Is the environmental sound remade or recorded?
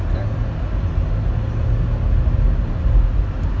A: recorded